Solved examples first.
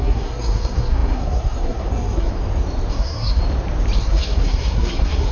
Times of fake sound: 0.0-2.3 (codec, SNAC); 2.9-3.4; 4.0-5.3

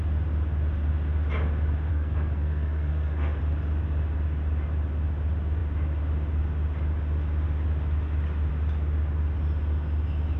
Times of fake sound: 1.9-3.4 (codec, SNAC)

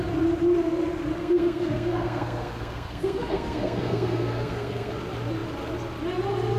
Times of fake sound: 1.2-4.9 (codec, SNAC)

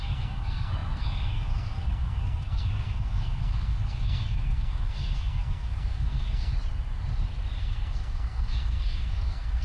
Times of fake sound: 0.0-6.5 (codec, SNAC); 7.6-9.6

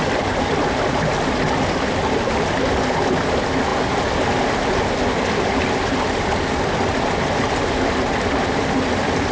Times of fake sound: none

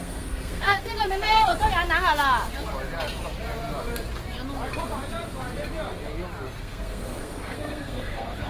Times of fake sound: 0.0-1.5 (codec, SNAC); 6.6-8.5

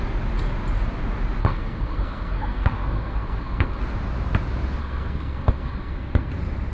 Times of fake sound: 1.4-3.8 (codec, SNAC); 4.8-6.3